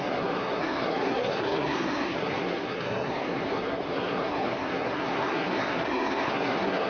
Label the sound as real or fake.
fake